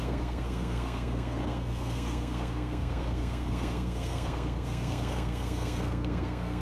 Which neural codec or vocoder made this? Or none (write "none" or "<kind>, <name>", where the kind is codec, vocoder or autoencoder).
codec, SNAC